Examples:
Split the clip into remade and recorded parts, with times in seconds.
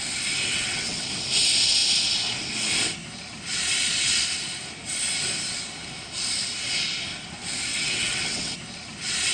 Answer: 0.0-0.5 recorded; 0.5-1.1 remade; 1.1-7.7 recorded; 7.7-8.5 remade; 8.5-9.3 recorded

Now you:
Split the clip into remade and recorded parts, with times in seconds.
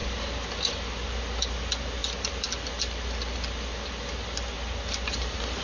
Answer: 0.0-5.6 recorded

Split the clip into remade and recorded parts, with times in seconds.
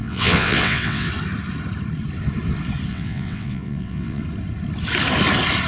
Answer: 0.0-1.1 remade; 1.1-2.9 recorded; 2.9-4.2 remade; 4.2-5.7 recorded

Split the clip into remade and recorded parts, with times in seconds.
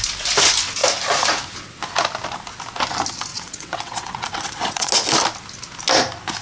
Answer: 0.0-3.3 recorded; 3.3-4.9 remade; 4.9-6.4 recorded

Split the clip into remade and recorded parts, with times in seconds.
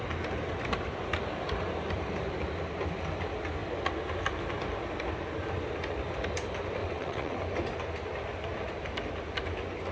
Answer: 0.0-6.8 recorded; 6.8-7.4 remade; 7.4-9.9 recorded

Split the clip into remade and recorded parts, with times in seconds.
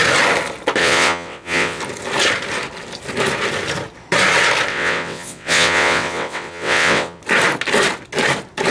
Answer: 0.0-0.8 recorded; 0.8-1.8 remade; 1.8-4.7 recorded; 4.7-7.2 remade; 7.2-8.7 recorded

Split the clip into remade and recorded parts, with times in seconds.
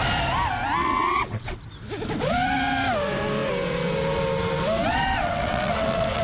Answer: 0.0-0.8 recorded; 0.8-1.6 remade; 1.6-4.9 recorded; 4.9-6.2 remade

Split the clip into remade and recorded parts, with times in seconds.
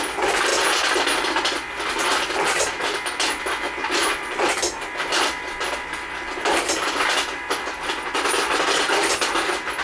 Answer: 0.0-9.8 recorded